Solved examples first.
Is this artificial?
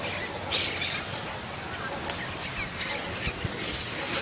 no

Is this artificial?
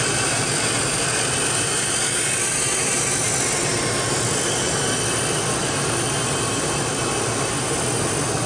no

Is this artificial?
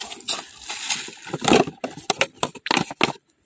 no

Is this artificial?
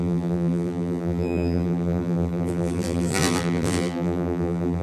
yes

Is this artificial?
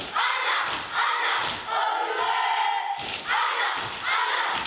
no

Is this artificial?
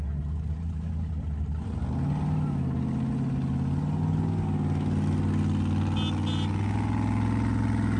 no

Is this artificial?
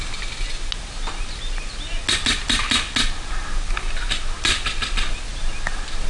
no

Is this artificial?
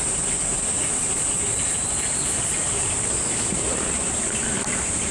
yes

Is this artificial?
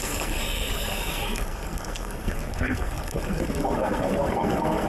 yes